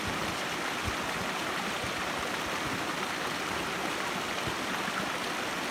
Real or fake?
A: real